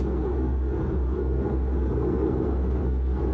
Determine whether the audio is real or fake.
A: fake